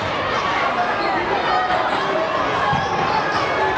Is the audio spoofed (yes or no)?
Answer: no